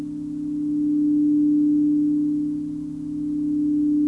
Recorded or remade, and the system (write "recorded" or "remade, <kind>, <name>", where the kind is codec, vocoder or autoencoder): recorded